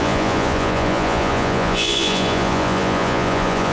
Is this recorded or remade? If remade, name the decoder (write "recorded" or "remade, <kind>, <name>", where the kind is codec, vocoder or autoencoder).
remade, vocoder, Vocos